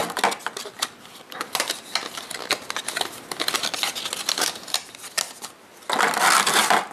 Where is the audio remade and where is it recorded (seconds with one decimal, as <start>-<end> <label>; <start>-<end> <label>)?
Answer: 0.0-6.9 recorded